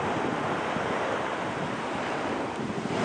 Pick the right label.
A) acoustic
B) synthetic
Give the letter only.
A